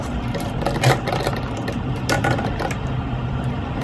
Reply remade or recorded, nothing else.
recorded